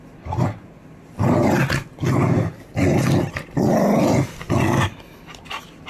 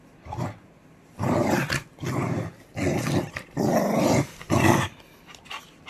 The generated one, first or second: second